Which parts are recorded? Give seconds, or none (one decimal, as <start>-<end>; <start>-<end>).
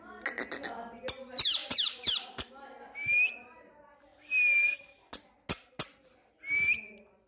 0.0-1.6; 2.5-7.3